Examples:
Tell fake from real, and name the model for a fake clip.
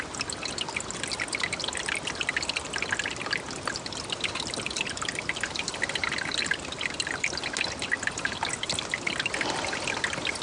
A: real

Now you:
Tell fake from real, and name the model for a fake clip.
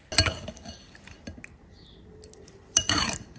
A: real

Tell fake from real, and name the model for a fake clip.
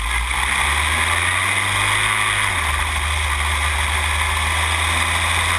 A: real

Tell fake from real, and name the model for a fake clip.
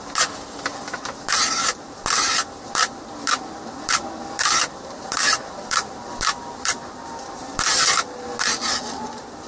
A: real